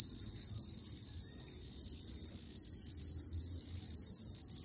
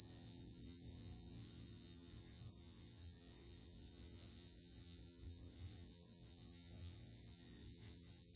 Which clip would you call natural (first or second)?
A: first